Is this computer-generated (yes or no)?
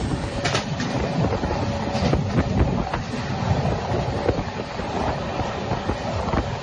no